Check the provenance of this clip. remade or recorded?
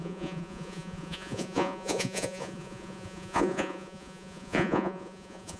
remade